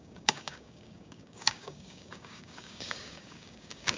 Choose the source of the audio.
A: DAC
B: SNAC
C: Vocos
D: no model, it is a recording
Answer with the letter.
A